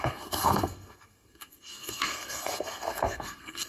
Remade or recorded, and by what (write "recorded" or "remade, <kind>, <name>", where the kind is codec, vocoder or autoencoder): remade, codec, SNAC